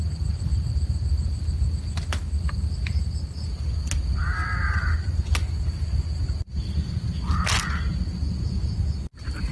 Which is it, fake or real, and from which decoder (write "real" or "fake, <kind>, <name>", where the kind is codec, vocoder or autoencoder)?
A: real